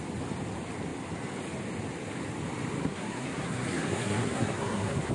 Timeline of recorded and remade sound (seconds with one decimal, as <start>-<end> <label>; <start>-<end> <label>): 0.0-2.8 recorded; 2.8-5.1 remade